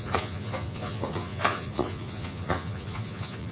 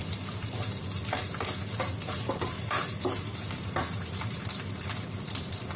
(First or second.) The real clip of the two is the second